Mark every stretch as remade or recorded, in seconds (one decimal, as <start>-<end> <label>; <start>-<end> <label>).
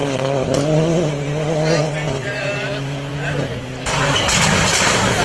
0.0-2.2 recorded; 2.2-3.1 remade; 3.1-5.2 recorded